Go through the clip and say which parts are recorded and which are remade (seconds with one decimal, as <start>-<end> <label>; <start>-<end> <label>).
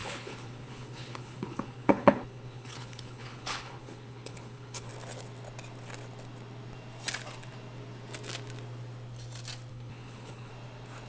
0.0-4.9 remade; 4.9-9.7 recorded; 9.7-10.5 remade; 10.5-11.1 recorded